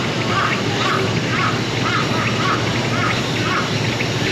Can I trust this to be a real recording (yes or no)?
yes